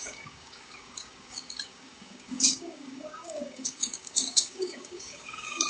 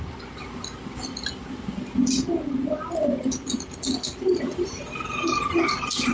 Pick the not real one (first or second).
first